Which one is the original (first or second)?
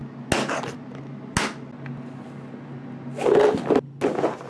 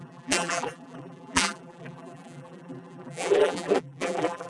first